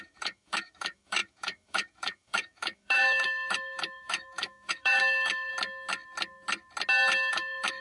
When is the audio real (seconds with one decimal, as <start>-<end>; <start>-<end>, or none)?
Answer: 5.5-7.3